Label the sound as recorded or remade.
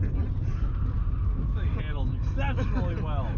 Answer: recorded